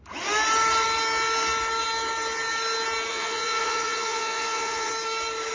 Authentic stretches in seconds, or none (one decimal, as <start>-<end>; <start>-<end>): 0.0-3.1; 4.9-5.5